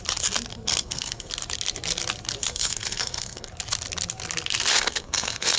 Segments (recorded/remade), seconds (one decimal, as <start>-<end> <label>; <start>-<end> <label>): 0.0-0.5 recorded; 0.5-1.3 remade; 1.3-2.4 recorded; 2.4-3.5 remade; 3.5-4.7 recorded; 4.7-5.6 remade